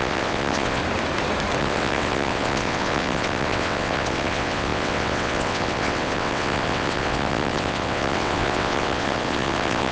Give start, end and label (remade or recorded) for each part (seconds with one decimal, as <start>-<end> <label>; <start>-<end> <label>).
0.0-0.8 remade; 0.8-1.6 recorded; 1.6-9.9 remade